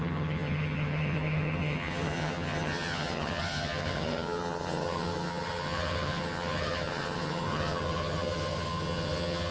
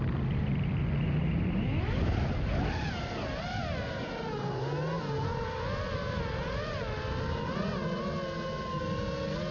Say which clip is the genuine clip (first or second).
second